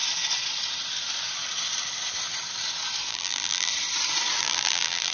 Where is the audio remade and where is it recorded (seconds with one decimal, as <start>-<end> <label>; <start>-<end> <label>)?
0.0-3.1 recorded; 3.1-3.7 remade; 3.7-4.4 recorded; 4.4-5.1 remade